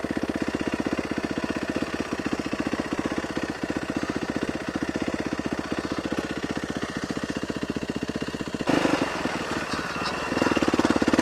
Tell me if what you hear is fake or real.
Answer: real